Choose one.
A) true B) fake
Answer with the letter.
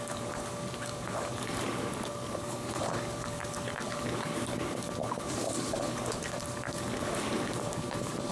B